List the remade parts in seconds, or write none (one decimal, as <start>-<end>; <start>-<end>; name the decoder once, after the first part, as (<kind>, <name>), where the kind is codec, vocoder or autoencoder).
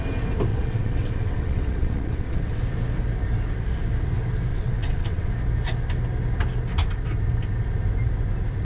0.5-2.6 (vocoder, WaveNeXt); 4.5-5.3